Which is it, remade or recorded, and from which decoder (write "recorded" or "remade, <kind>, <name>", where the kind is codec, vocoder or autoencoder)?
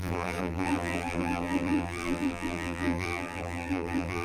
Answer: remade, vocoder, BigVGAN v2